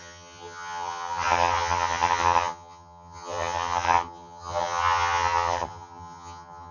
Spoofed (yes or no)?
yes